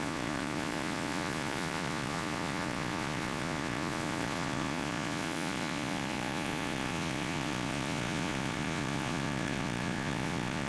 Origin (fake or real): fake